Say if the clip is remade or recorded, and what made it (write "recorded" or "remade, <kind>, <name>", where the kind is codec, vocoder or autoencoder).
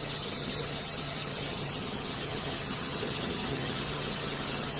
remade, vocoder, HiFi-GAN